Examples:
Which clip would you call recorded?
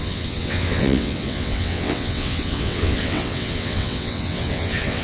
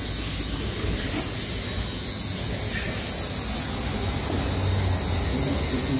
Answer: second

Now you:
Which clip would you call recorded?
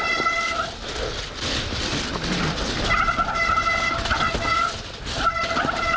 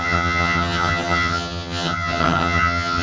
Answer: first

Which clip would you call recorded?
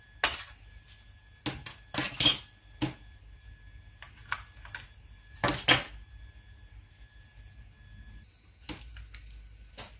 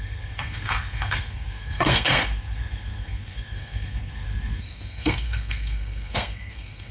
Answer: first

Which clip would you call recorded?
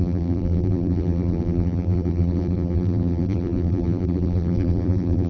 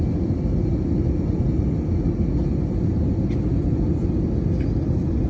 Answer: second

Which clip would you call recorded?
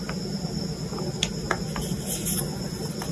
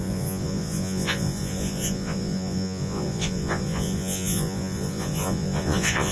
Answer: first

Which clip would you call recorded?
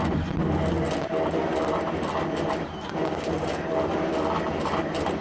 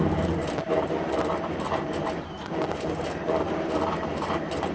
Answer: first